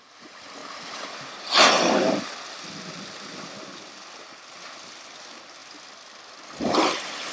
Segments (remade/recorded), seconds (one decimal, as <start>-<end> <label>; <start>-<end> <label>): 0.0-7.3 recorded